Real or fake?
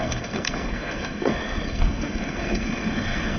fake